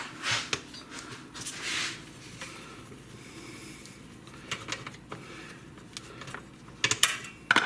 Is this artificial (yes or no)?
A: no